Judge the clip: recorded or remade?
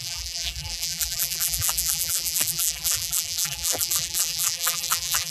remade